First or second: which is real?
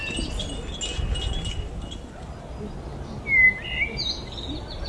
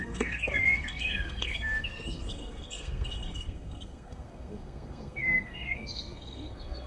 first